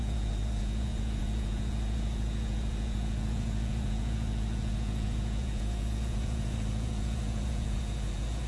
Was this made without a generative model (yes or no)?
no